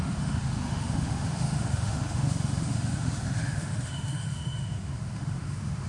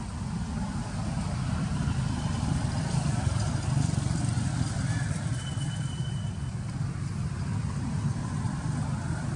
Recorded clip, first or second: second